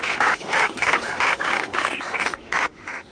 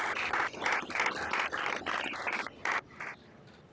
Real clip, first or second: second